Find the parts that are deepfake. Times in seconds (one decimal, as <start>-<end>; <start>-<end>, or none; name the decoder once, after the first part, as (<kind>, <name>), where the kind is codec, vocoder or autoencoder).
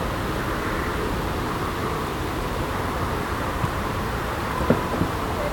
1.8-5.1 (vocoder, BigVGAN v2)